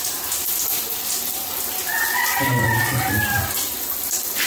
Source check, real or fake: real